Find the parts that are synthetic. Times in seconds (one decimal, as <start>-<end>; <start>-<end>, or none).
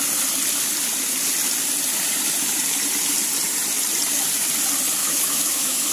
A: 5.0-5.9